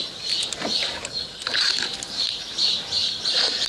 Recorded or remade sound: recorded